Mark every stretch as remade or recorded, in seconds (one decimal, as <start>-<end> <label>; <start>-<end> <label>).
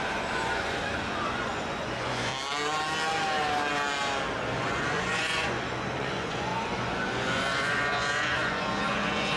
0.0-2.3 remade; 2.3-4.4 recorded; 4.4-9.4 remade